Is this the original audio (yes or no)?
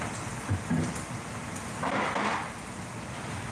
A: yes